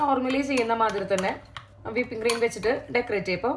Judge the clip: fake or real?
real